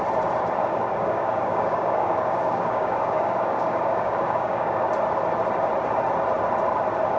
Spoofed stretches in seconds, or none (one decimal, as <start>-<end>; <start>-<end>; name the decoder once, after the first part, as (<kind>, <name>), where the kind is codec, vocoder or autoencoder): 0.6-4.9 (codec, DAC)